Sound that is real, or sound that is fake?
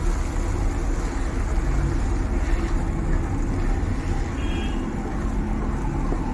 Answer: real